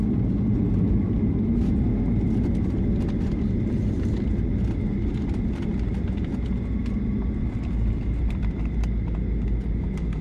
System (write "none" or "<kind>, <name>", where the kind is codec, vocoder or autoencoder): none